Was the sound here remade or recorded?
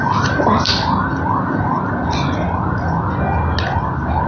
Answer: recorded